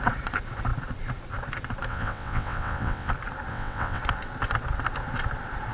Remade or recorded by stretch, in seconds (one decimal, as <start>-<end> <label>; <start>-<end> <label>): 0.0-1.9 recorded; 1.9-3.1 remade; 3.1-3.5 recorded; 3.5-4.0 remade; 4.0-5.7 recorded